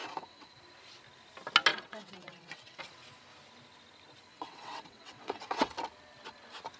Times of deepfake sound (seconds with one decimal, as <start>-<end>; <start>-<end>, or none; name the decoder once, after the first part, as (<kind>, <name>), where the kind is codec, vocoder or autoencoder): 0.0-0.5 (vocoder, WaveNeXt); 1.7-2.8; 4.3-5.7